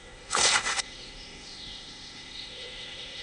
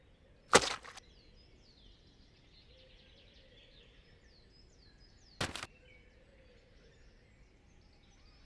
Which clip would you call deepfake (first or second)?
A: first